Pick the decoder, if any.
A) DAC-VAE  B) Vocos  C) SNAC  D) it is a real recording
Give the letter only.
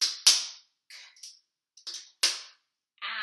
D